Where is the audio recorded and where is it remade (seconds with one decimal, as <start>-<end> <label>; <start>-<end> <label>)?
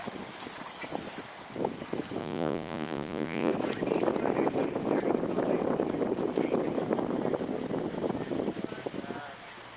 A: 0.0-2.2 recorded; 2.2-3.5 remade; 3.5-9.8 recorded